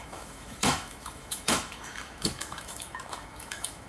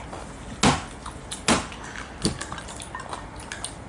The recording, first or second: second